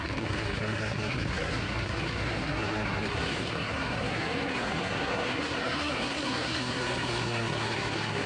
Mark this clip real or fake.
fake